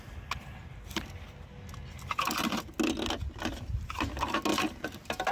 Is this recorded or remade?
recorded